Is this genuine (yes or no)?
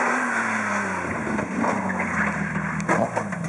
yes